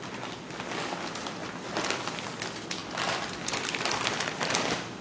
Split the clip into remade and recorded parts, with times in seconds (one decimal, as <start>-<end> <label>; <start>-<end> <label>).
0.0-5.0 recorded